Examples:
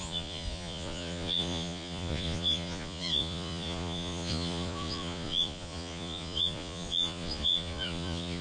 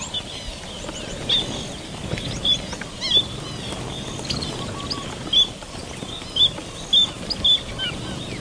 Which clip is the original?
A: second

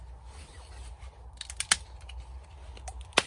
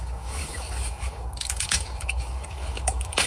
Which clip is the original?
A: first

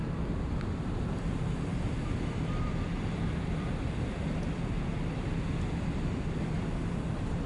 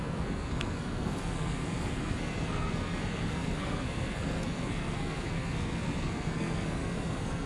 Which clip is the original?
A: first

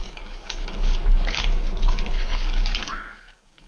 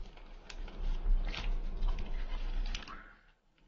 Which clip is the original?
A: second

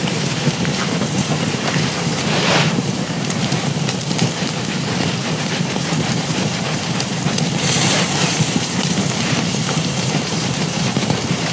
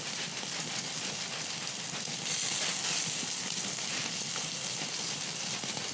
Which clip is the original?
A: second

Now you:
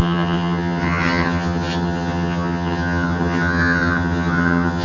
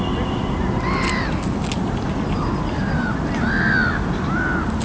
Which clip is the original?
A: second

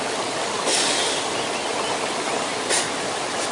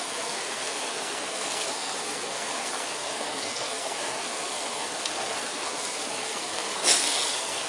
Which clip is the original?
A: first